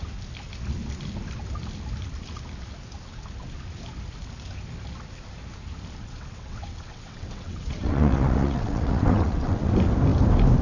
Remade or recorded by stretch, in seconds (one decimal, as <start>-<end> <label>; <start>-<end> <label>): 0.0-6.0 recorded; 6.0-9.7 remade; 9.7-10.6 recorded